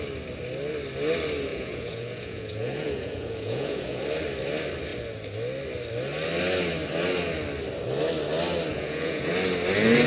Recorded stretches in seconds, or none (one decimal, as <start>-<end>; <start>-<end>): 0.0-1.5; 4.0-8.7; 9.3-10.1